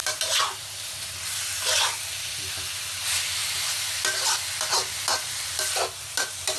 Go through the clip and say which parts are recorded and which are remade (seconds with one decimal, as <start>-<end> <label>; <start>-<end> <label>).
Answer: 0.0-0.9 remade; 0.9-3.4 recorded; 3.4-4.0 remade; 4.0-6.6 recorded